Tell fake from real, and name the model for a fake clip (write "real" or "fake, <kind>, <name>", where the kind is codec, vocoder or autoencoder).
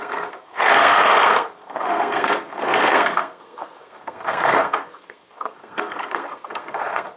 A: fake, codec, SNAC